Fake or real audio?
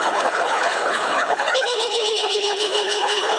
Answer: fake